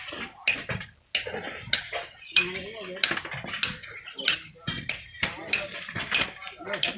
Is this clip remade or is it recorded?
recorded